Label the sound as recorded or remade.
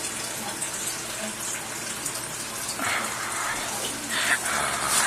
recorded